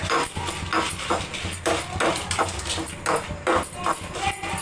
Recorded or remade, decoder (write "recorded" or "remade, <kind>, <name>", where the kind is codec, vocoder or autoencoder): recorded